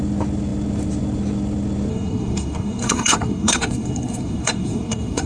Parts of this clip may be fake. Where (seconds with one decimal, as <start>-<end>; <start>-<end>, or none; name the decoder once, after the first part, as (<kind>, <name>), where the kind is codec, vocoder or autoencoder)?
1.9-5.3 (codec, SNAC)